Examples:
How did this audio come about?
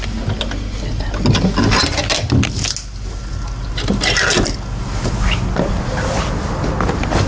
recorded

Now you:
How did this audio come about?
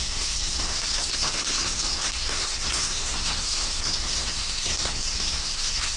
remade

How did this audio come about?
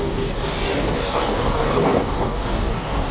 remade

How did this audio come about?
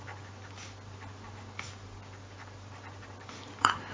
recorded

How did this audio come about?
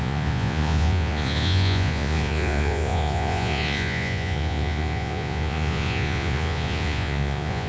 remade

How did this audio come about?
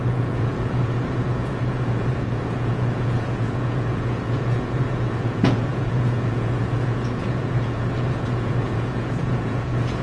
remade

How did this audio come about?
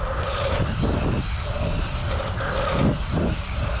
recorded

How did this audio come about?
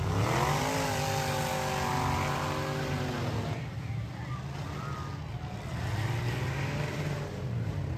recorded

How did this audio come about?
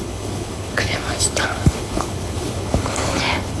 remade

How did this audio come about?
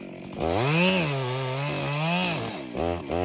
recorded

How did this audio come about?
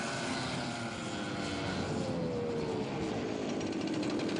recorded